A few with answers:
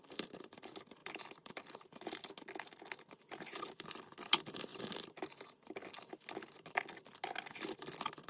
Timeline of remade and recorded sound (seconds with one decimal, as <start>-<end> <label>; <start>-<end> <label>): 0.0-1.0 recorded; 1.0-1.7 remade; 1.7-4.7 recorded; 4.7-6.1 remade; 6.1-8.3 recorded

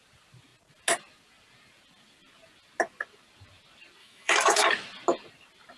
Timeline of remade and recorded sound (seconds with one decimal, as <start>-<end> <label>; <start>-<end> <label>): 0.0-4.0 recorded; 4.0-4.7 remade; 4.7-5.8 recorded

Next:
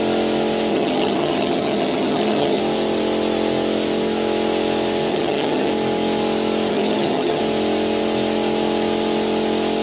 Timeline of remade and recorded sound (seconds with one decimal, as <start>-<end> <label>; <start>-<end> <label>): 0.0-0.7 recorded; 0.7-2.6 remade; 2.6-5.1 recorded; 5.1-5.7 remade; 5.7-6.7 recorded; 6.7-7.4 remade; 7.4-9.8 recorded